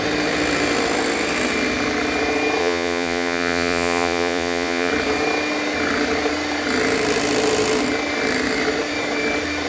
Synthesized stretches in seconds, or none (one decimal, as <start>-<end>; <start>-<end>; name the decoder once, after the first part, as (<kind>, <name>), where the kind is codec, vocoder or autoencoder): 2.6-4.9 (vocoder, Vocos)